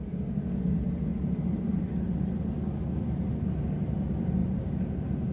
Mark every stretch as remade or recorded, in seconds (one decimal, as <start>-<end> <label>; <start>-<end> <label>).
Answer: 0.0-4.4 recorded; 4.4-5.3 remade